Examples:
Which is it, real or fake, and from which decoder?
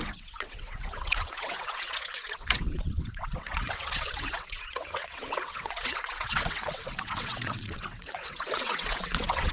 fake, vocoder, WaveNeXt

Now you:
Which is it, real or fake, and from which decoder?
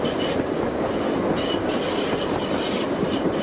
real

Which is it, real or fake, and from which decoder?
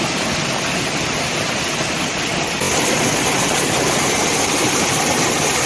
real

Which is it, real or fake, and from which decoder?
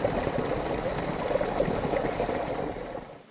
real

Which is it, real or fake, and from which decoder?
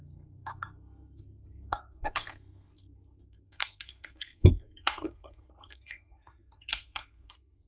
fake, codec, SNAC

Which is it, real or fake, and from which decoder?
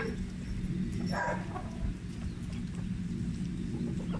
real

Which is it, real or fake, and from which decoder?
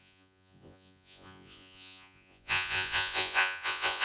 fake, vocoder, Vocos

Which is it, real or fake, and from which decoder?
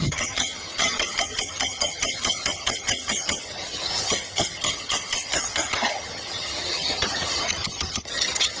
fake, vocoder, HiFi-GAN